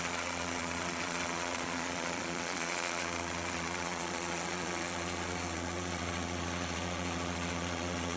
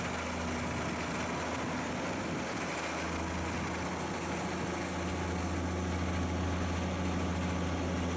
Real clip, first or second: second